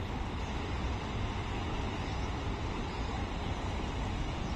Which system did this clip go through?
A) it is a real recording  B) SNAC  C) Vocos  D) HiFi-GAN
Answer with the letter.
A